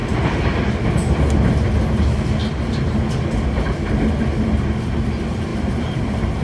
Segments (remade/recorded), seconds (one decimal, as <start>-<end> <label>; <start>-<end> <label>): 0.0-2.4 recorded; 2.4-3.0 remade; 3.0-5.5 recorded; 5.5-6.4 remade